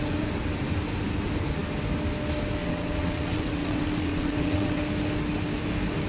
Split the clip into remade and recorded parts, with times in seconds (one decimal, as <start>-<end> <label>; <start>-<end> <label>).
0.0-2.6 recorded; 2.6-4.8 remade; 4.8-6.1 recorded